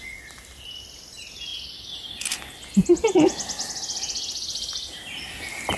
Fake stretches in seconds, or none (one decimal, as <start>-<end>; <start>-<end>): none